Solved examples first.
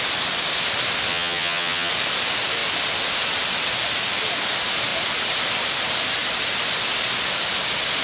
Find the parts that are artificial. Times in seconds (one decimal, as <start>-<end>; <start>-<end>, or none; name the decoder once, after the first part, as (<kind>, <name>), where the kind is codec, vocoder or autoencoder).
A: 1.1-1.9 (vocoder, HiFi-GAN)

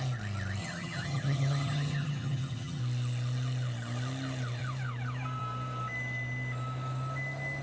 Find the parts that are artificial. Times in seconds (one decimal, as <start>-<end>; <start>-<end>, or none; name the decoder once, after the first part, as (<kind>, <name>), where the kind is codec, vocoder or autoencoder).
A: 0.6-2.8 (vocoder, HiFi-GAN)

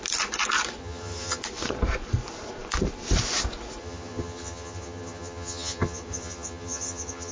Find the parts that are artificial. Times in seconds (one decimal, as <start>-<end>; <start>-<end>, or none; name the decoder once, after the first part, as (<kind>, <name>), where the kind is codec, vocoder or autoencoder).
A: 0.8-1.4 (vocoder, HiFi-GAN); 3.8-7.3

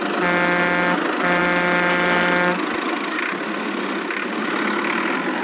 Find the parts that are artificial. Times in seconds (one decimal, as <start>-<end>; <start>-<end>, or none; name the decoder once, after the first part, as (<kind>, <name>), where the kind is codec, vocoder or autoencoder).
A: none